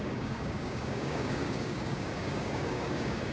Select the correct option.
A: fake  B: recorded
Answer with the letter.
A